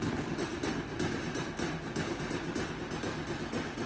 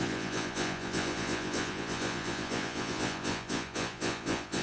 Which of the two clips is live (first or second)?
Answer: first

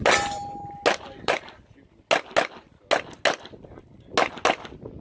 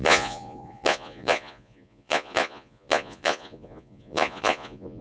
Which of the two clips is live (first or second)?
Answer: first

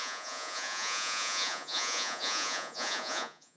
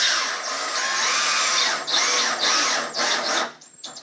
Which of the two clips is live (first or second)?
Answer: second